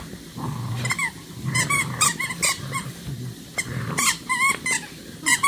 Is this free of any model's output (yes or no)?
yes